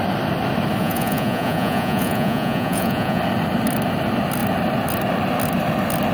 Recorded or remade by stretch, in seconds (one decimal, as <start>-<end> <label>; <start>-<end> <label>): 0.0-0.8 recorded; 0.8-3.2 remade; 3.2-6.1 recorded

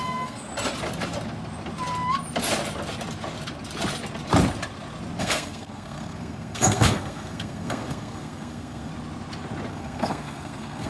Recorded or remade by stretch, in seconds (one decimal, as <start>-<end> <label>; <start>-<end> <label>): 0.0-0.5 remade; 0.5-5.2 recorded; 5.2-8.9 remade; 8.9-9.7 recorded; 9.7-10.9 remade

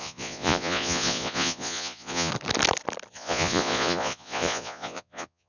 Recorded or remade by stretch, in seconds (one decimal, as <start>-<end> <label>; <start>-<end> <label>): 0.0-2.3 remade; 2.3-3.1 recorded; 3.1-5.5 remade

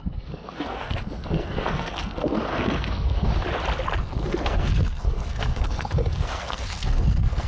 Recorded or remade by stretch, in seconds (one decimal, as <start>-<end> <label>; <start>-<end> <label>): 0.0-3.3 remade; 3.3-4.0 recorded; 4.0-7.5 remade